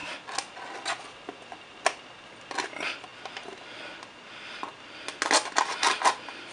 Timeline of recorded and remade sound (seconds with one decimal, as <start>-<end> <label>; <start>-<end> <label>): 0.0-6.5 recorded